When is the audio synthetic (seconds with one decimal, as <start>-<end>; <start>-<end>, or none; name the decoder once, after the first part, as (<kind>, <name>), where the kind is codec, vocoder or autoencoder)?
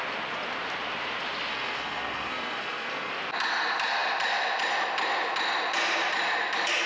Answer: 1.5-3.1 (codec, SNAC)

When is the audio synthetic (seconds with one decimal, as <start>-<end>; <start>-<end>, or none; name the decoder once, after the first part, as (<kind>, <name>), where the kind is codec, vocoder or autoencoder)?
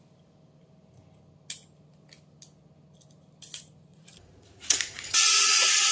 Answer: 3.9-5.9 (vocoder, Vocos)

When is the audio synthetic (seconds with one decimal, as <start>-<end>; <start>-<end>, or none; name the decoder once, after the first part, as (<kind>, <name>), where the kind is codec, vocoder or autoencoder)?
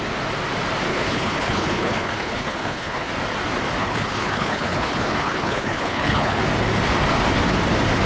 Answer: 0.9-3.1 (codec, HILCodec); 3.8-6.4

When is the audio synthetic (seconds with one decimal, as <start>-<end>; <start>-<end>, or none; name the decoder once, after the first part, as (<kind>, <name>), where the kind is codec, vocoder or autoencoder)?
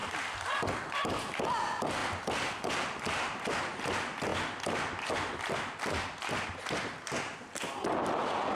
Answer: 0.0-0.5 (vocoder, BigVGAN v2)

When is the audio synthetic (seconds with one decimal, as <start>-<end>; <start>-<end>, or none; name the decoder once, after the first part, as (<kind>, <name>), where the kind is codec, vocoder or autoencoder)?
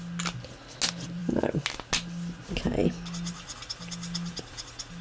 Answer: none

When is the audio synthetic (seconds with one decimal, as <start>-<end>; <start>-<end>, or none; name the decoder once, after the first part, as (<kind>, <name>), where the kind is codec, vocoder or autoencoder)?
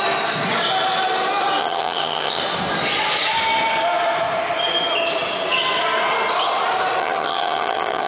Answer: 1.6-2.4 (vocoder, HiFi-GAN); 7.0-8.1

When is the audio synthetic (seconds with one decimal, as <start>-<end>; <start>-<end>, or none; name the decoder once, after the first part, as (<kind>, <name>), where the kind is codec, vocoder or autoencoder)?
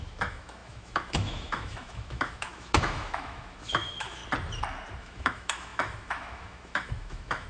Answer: 0.0-4.2 (autoencoder, DAC-VAE); 5.0-7.5